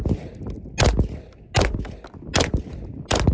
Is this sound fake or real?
real